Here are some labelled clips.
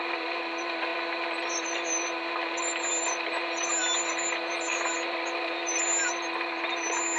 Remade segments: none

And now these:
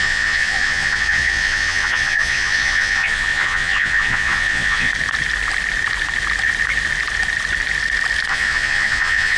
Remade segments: 0.0-4.9 (vocoder, Vocos); 8.3-9.4

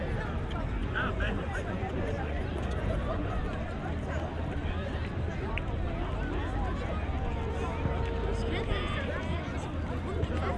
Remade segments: 0.8-3.4 (vocoder, Vocos)

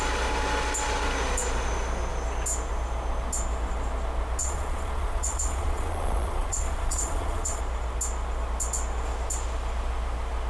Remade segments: 4.4-7.6 (vocoder, Vocos)

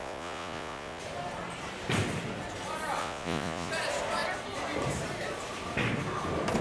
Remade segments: 0.0-1.0 (vocoder, Vocos); 3.0-3.7